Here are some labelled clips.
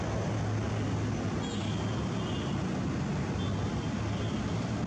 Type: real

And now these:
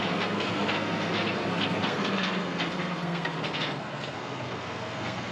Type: fake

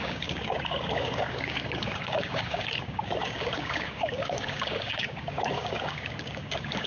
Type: fake